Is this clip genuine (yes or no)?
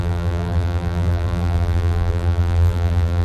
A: no